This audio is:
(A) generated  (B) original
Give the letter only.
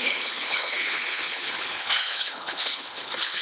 A